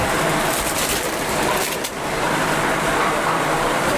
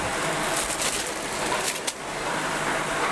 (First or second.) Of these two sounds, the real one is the second